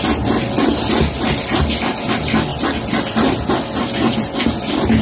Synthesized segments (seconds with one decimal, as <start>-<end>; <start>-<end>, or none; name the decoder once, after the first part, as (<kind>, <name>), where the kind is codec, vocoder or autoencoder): none